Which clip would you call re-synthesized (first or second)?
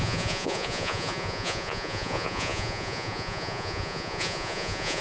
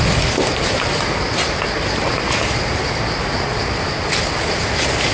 first